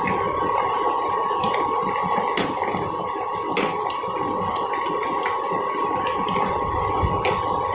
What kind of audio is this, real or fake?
fake